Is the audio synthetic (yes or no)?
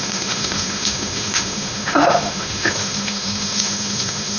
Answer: yes